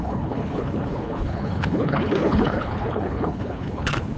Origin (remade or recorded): remade